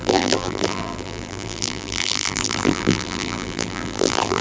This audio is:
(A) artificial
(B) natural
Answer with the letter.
A